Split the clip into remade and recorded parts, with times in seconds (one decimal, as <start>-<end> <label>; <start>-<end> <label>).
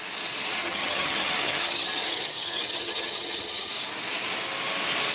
0.0-0.6 recorded; 0.6-3.7 remade; 3.7-5.1 recorded